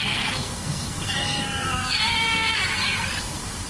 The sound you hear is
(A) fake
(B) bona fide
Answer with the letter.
A